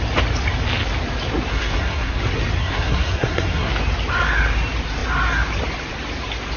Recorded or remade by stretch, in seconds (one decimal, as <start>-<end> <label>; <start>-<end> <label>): 0.0-1.5 recorded; 1.5-2.2 remade; 2.2-2.6 recorded; 2.6-3.7 remade; 3.7-6.6 recorded